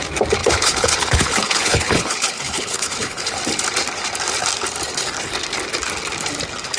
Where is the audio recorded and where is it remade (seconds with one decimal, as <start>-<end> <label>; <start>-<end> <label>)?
0.0-0.4 recorded; 0.4-3.4 remade; 3.4-6.8 recorded